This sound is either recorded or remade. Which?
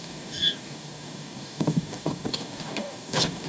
remade